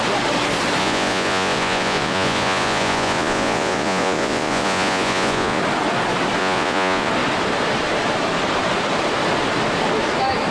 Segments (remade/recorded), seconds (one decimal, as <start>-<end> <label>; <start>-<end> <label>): 0.0-0.8 recorded; 0.8-5.6 remade; 5.6-6.4 recorded; 6.4-7.1 remade; 7.1-10.5 recorded